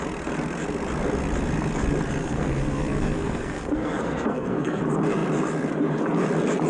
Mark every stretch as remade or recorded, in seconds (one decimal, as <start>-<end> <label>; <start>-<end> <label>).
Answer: 0.0-2.2 recorded; 2.2-4.8 remade; 4.8-6.7 recorded